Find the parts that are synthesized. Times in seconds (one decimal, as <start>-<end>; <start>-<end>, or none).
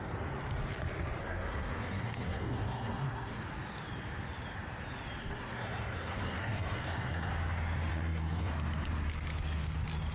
1.2-3.4; 5.2-7.3; 7.9-8.5